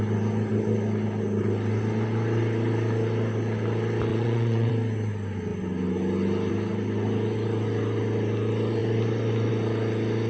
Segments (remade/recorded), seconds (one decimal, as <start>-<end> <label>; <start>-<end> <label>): 0.0-4.1 recorded; 4.1-4.7 remade; 4.7-10.3 recorded